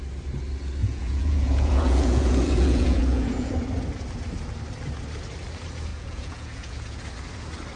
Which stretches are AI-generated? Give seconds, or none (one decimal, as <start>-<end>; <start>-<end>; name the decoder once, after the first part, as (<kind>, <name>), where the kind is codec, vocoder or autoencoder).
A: 0.8-3.5 (vocoder, Vocos); 5.9-7.0